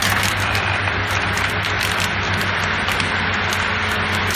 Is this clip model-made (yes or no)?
no